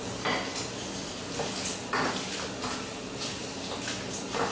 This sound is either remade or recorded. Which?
recorded